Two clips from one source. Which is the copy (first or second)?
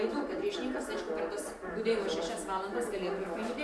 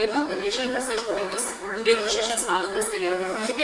second